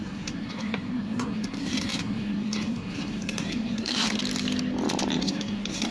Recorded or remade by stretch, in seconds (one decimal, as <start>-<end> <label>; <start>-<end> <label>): 0.0-4.2 remade; 4.2-5.2 recorded; 5.2-5.9 remade